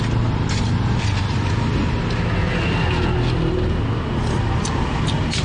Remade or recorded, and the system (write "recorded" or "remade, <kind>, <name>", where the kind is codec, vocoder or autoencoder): recorded